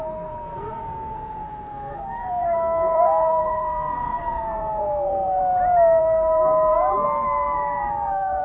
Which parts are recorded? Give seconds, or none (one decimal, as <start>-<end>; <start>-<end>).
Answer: 5.4-6.0